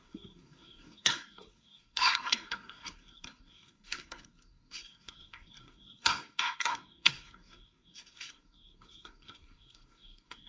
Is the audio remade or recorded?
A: remade